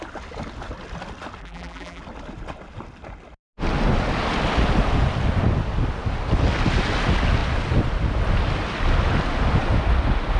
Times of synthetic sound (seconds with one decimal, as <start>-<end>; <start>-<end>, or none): 1.4-2.0